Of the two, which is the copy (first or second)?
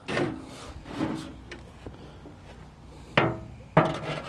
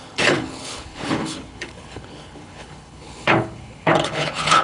second